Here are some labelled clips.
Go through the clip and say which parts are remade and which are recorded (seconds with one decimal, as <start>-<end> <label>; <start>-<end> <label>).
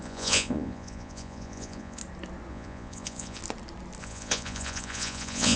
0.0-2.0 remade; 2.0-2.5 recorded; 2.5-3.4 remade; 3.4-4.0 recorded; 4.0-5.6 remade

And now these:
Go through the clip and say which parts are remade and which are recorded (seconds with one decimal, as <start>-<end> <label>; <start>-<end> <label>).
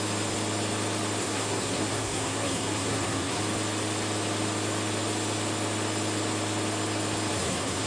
0.0-1.2 recorded; 1.2-3.4 remade; 3.4-7.3 recorded; 7.3-7.9 remade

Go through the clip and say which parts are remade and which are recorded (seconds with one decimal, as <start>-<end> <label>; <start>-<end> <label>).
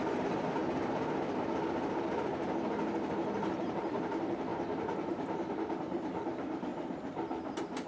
0.0-0.6 remade; 0.6-1.8 recorded; 1.8-2.3 remade; 2.3-3.4 recorded; 3.4-6.7 remade; 6.7-7.5 recorded; 7.5-7.9 remade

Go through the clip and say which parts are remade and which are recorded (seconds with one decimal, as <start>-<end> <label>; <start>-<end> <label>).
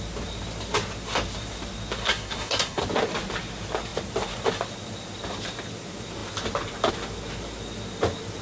0.0-2.0 recorded; 2.0-2.8 remade; 2.8-8.4 recorded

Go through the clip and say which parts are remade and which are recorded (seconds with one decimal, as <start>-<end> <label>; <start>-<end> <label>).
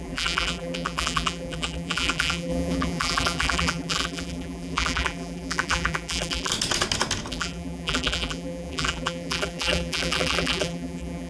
0.0-6.5 remade; 6.5-7.3 recorded; 7.3-11.3 remade